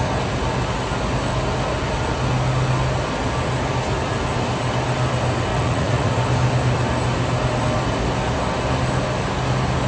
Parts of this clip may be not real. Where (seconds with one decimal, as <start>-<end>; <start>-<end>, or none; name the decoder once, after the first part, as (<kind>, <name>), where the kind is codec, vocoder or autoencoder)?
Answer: 5.5-6.1 (vocoder, Vocos)